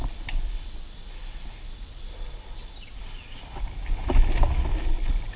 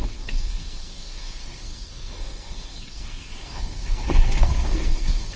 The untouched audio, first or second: first